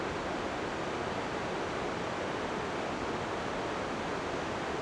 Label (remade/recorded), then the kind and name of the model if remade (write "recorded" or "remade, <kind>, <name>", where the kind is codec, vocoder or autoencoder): recorded